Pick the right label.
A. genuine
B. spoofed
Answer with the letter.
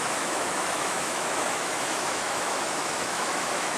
B